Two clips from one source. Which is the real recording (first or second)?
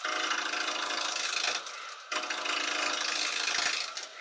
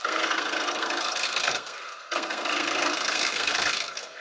first